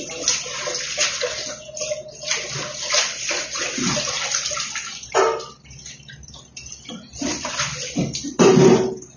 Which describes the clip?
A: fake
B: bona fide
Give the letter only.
B